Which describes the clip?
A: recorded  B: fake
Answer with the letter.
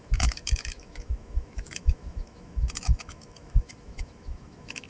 B